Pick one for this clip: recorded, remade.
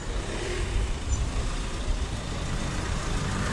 recorded